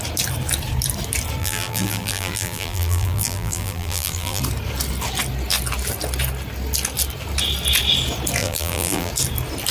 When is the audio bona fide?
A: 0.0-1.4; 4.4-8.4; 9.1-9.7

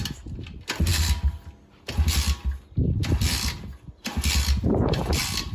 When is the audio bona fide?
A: 0.0-5.5